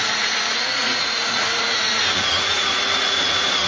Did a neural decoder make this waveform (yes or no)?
yes